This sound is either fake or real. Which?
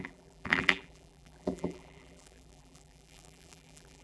fake